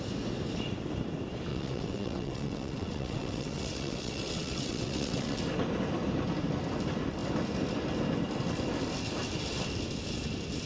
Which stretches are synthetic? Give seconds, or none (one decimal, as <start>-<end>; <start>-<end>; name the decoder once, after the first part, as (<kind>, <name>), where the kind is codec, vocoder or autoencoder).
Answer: 1.5-5.4 (vocoder, WaveNeXt)